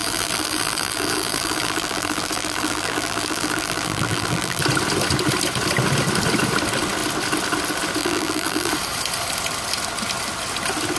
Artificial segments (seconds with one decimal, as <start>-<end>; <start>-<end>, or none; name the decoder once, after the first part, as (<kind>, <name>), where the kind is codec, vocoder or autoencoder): 0.0-4.6 (vocoder, BigVGAN v2); 8.0-8.7